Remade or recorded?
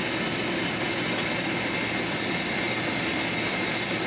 recorded